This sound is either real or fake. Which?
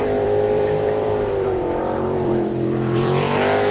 fake